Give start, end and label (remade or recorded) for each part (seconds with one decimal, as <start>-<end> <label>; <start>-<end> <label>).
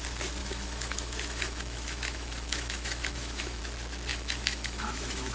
0.0-0.4 recorded; 0.4-3.6 remade; 3.6-4.1 recorded; 4.1-5.3 remade